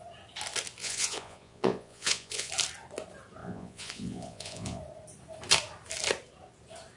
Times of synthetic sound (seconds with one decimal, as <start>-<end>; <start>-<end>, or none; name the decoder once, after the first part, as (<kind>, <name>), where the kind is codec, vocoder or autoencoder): 0.8-2.5 (vocoder, Vocos); 3.4-4.8